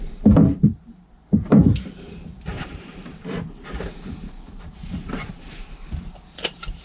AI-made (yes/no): yes